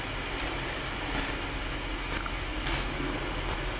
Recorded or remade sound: recorded